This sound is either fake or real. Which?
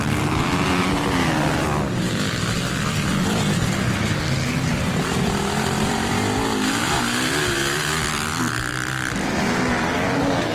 real